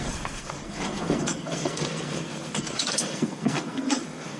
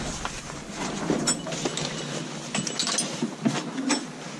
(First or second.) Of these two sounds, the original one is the second